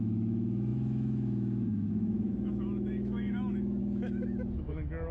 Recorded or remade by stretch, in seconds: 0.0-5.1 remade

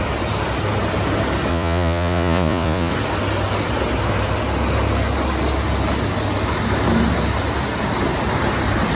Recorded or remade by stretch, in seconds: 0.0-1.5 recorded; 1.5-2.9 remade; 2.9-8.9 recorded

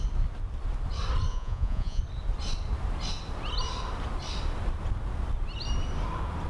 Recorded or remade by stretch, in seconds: 0.0-1.3 recorded; 1.3-2.0 remade; 2.0-6.5 recorded

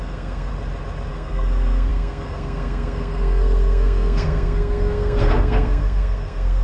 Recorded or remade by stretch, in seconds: 0.0-0.5 remade; 0.5-1.1 recorded; 1.1-6.6 remade

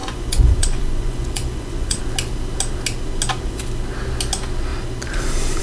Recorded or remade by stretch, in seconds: 0.0-2.0 remade; 2.0-5.6 recorded

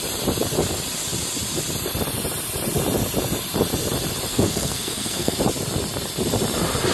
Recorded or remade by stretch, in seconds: 0.0-4.3 recorded; 4.3-5.4 remade; 5.4-6.9 recorded